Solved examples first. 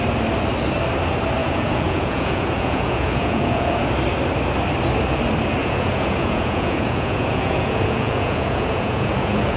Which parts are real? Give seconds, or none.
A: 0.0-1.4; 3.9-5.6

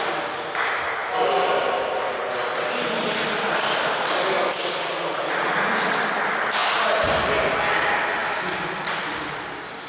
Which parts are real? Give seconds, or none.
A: 0.0-4.6; 5.9-6.6; 7.1-9.9

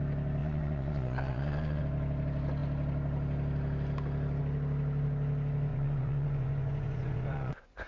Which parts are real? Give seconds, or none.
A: 0.0-0.4; 1.8-5.7

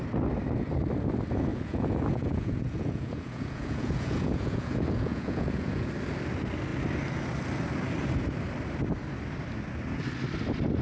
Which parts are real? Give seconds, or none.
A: 0.0-1.5; 5.9-10.8

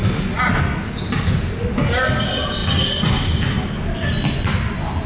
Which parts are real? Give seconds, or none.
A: 0.0-5.1